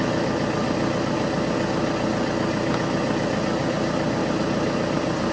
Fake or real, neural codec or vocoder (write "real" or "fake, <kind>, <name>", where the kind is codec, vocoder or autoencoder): real